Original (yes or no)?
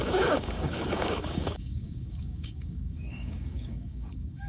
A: no